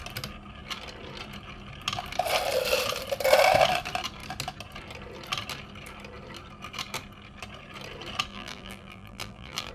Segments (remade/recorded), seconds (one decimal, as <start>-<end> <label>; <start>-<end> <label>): 0.0-8.3 recorded; 8.3-9.7 remade